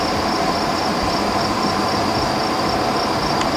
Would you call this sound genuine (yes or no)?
yes